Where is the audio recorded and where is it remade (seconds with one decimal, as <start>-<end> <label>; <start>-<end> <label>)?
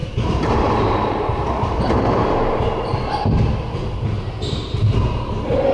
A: 0.0-3.4 remade; 3.4-3.8 recorded; 3.8-5.7 remade